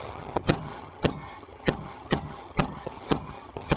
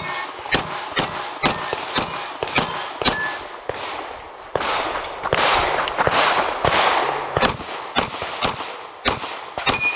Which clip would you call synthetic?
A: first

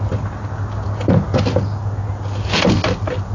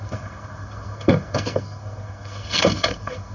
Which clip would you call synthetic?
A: second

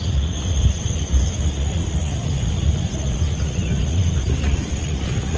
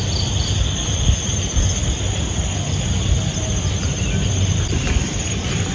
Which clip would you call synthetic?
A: first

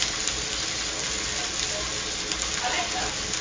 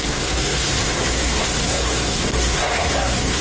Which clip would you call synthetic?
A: second